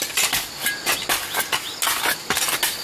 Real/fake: real